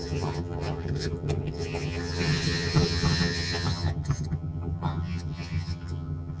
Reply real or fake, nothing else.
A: fake